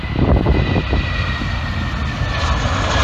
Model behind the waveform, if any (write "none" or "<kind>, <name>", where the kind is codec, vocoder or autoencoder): none